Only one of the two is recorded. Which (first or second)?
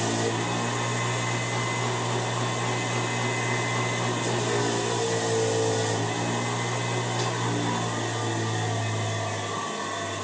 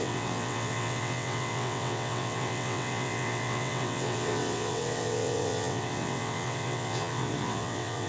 first